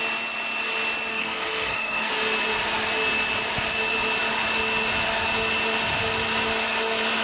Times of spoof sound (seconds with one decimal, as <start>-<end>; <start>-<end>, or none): 1.1-2.1